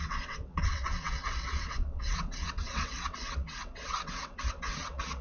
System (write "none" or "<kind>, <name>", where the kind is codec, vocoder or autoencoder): vocoder, WaveNeXt